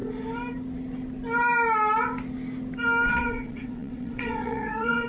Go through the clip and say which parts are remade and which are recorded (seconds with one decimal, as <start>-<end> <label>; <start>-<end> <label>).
0.0-3.1 recorded; 3.1-5.1 remade